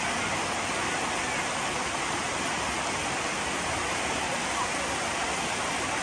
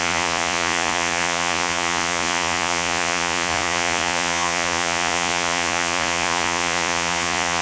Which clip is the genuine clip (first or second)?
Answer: first